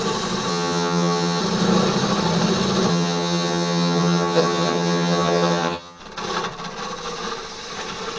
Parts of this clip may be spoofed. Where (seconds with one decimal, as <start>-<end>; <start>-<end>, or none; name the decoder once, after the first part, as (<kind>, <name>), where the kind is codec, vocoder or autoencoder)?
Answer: 0.5-1.4 (vocoder, HiFi-GAN); 2.9-6.0